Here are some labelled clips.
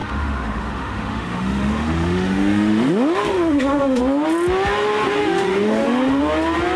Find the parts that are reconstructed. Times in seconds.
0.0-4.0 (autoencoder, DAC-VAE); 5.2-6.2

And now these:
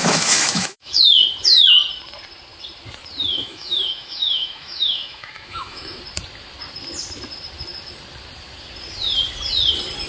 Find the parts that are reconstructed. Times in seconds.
0.0-1.0 (autoencoder, DAC-VAE); 3.3-6.0